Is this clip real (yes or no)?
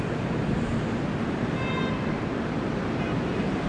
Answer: yes